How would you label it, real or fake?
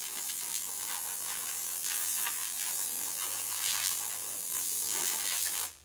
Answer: fake